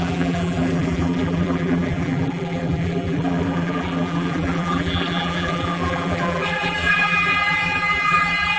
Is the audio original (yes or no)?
no